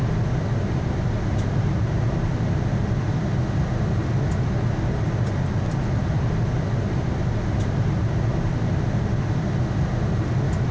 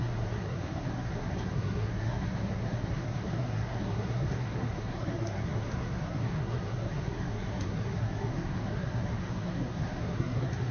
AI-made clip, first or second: second